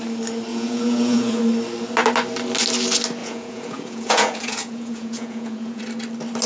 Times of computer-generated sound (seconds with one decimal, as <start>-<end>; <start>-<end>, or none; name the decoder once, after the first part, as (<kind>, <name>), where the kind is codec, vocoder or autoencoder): 0.5-1.4 (vocoder, Vocos); 3.2-5.8